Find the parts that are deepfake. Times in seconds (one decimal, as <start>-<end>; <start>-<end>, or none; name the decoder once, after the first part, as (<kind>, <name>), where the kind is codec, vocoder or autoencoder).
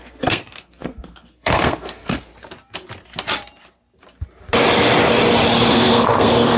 0.0-2.3 (codec, SNAC); 5.7-6.6